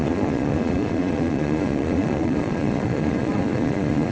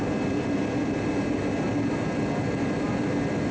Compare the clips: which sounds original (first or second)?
second